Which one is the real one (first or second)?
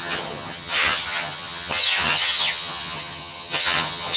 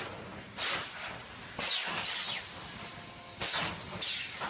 second